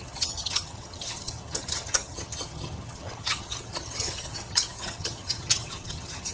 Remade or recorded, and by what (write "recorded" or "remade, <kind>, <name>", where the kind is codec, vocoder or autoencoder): remade, vocoder, HiFi-GAN